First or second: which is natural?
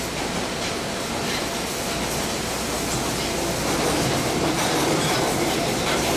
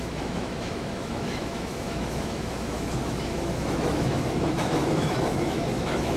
first